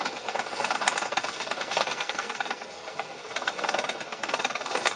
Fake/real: fake